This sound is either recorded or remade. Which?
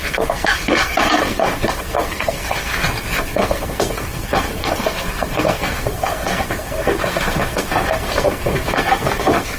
remade